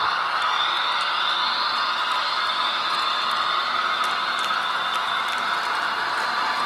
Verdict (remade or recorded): recorded